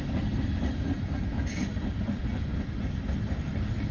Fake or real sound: real